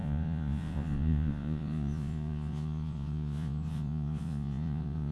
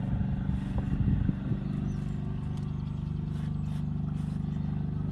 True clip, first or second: second